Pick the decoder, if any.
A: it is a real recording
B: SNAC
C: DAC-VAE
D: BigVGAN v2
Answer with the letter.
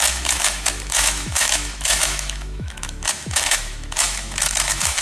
C